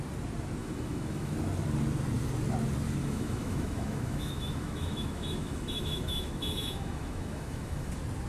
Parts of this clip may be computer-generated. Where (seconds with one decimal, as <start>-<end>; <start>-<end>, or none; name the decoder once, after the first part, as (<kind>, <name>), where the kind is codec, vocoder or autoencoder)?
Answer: 0.6-1.3 (autoencoder, DAC-VAE); 3.0-7.9

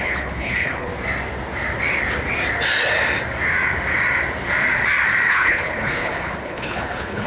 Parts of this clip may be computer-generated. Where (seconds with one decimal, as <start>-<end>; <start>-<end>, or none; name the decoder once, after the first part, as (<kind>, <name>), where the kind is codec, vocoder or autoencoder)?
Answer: 0.0-0.9 (codec, HILCodec); 5.3-7.3

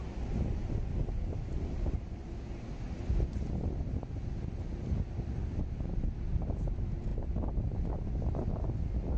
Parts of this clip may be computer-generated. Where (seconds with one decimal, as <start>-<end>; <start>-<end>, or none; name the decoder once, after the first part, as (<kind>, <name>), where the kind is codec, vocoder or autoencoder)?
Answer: 0.6-3.8 (vocoder, BigVGAN v2)

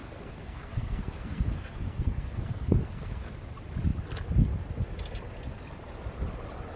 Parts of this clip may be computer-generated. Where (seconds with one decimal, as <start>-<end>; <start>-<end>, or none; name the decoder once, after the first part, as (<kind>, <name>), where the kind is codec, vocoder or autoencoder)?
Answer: 0.0-3.3 (codec, SNAC)

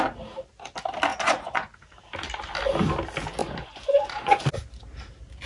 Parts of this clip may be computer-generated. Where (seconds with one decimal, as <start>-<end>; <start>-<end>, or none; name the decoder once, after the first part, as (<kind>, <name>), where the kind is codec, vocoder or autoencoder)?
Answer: 1.1-1.7 (vocoder, Vocos); 3.4-4.4

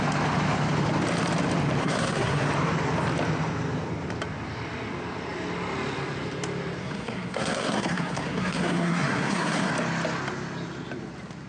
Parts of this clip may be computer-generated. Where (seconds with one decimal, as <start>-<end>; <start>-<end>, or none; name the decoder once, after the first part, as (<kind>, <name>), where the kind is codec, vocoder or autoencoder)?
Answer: 1.8-2.5 (codec, SNAC); 6.8-9.7

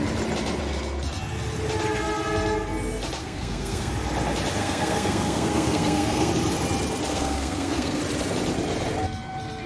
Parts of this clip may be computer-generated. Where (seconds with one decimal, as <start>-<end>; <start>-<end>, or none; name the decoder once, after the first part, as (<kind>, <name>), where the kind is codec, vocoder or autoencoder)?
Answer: 3.2-3.9 (codec, SNAC); 4.6-6.3; 7.1-8.0